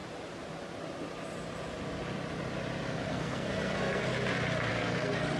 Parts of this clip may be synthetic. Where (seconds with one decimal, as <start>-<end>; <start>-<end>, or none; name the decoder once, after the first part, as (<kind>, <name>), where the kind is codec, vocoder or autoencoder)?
3.1-4.1 (codec, SNAC); 4.7-5.4